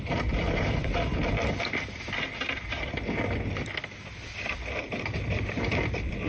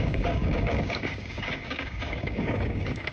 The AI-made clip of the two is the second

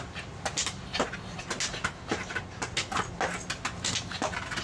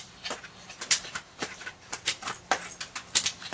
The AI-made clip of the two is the second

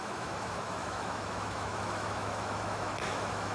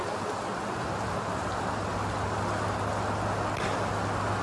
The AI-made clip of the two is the first